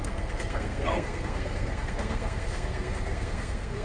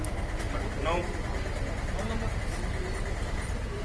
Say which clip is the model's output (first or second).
first